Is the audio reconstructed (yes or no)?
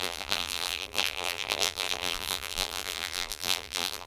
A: yes